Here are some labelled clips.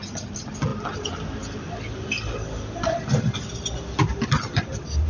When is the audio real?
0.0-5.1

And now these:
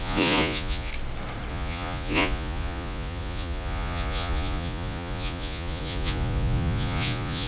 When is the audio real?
0.9-1.5

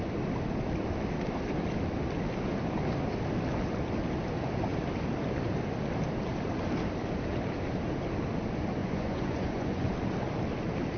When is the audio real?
0.0-8.8; 9.9-11.0